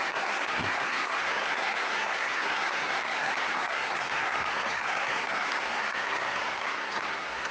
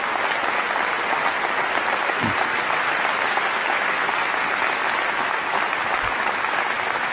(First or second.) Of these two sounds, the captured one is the second